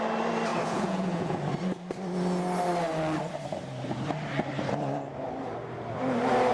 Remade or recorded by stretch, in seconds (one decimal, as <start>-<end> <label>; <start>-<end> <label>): 0.0-0.5 recorded; 0.5-1.4 remade; 1.4-6.5 recorded